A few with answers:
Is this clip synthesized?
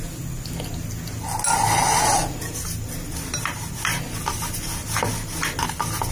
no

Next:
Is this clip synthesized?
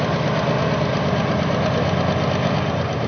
no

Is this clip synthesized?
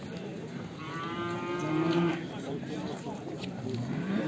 yes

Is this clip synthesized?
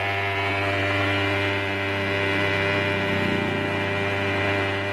no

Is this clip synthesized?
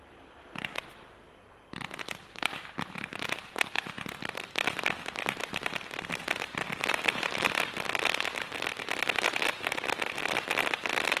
no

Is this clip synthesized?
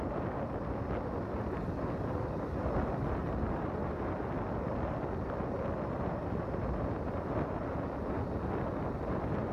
no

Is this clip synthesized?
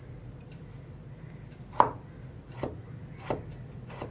no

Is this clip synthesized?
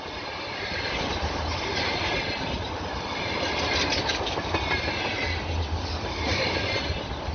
no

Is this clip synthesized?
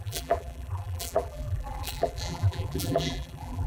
yes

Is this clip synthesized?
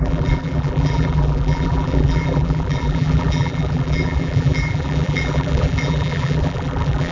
yes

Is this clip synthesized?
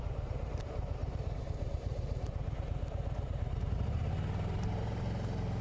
yes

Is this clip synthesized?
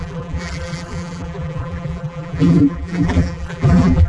yes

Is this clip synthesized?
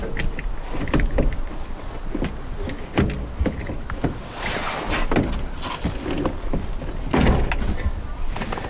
no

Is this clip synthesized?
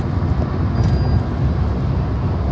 no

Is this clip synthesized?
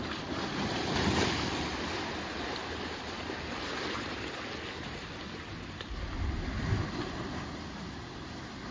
no